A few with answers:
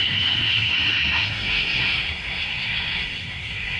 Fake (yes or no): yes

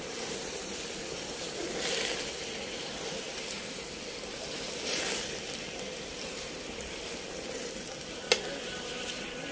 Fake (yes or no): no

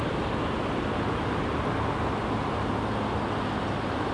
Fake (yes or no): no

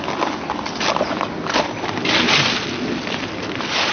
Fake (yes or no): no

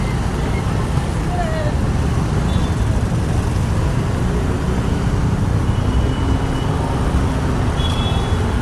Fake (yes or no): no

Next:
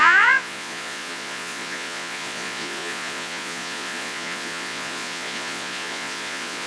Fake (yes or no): yes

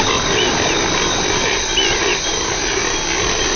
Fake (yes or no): no